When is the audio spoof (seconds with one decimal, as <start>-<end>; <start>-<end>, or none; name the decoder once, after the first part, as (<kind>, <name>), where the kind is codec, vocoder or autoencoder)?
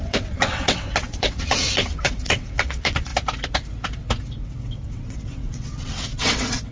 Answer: 0.0-3.1 (vocoder, WaveNeXt); 4.4-6.7